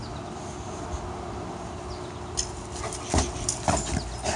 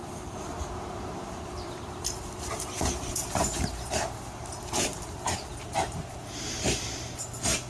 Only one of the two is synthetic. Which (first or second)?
second